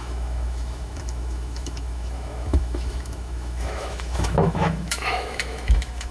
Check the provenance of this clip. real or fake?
fake